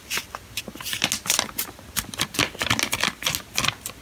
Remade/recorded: recorded